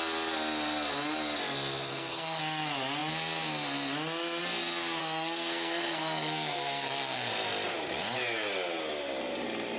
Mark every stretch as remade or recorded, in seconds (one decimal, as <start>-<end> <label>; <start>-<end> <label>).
0.0-1.9 recorded; 1.9-2.4 remade; 2.4-5.0 recorded; 5.0-7.3 remade; 7.3-9.8 recorded

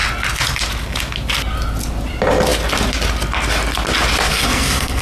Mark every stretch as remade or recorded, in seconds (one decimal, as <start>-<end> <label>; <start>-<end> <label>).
0.0-4.3 recorded; 4.3-5.0 remade

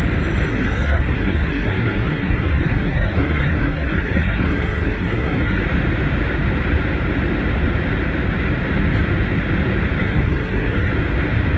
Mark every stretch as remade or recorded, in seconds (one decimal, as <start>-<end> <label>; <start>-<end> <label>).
0.0-0.5 recorded; 0.5-5.6 remade; 5.6-10.0 recorded; 10.0-10.9 remade; 10.9-11.6 recorded

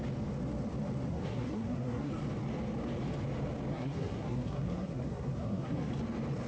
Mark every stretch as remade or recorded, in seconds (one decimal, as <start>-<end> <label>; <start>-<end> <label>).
0.0-1.1 recorded; 1.1-2.1 remade; 2.1-3.7 recorded; 3.7-5.9 remade; 5.9-6.5 recorded

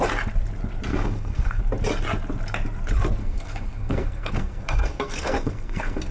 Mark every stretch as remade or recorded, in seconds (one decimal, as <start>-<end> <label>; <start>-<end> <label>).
0.0-0.9 recorded; 0.9-1.6 remade; 1.6-3.2 recorded; 3.2-6.1 remade

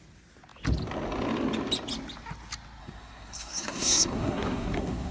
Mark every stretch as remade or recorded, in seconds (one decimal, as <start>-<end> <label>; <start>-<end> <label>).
0.0-2.8 recorded; 2.8-5.1 remade

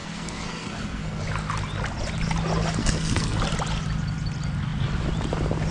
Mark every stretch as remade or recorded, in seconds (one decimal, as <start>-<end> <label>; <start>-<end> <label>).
0.0-1.2 remade; 1.2-2.8 recorded; 2.8-3.4 remade; 3.4-5.7 recorded